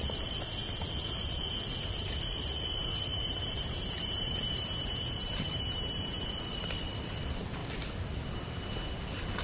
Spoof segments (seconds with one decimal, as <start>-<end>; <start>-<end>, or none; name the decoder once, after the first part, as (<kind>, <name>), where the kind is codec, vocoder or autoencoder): 3.1-6.3 (vocoder, BigVGAN v2)